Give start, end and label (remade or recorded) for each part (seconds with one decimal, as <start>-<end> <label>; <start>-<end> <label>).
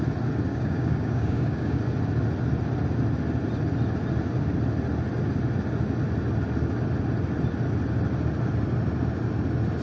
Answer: 0.0-0.5 recorded; 0.5-1.8 remade; 1.8-9.8 recorded